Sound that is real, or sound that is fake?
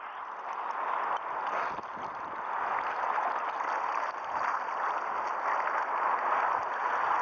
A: real